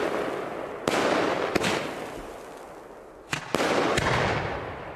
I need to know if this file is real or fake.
real